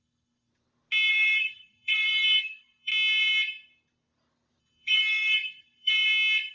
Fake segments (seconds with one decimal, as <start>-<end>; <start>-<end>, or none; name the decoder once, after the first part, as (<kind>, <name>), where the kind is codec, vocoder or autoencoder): 0.0-0.5 (codec, SNAC); 1.1-2.9; 4.6-5.9